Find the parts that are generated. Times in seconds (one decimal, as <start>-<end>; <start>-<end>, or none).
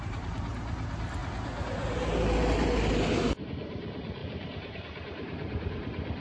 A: 0.0-1.2; 3.1-6.2